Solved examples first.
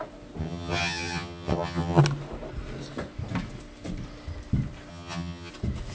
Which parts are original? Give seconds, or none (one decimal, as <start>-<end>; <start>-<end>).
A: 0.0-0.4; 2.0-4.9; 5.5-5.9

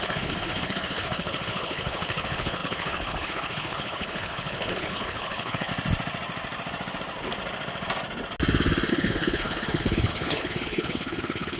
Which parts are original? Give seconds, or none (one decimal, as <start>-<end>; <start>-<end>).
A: 5.7-8.9

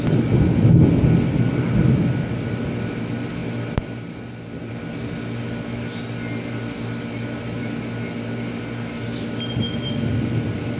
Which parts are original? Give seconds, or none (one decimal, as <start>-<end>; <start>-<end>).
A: 0.0-10.8

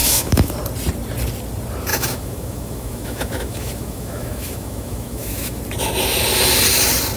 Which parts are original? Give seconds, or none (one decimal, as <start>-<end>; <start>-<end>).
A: 0.5-1.9; 5.6-7.2

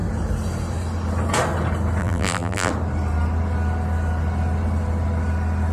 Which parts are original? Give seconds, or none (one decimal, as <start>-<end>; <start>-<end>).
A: 0.0-2.0; 2.7-5.7